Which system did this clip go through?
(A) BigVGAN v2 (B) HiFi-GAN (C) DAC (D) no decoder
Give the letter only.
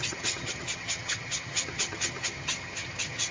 B